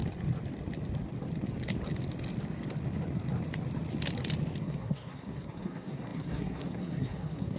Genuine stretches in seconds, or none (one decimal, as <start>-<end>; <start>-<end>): 0.0-4.6